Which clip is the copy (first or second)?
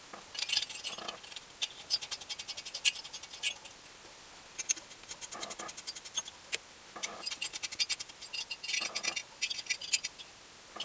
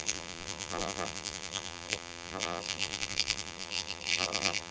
second